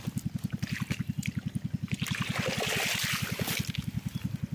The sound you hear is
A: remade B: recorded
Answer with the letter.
B